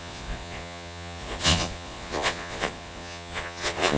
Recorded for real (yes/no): no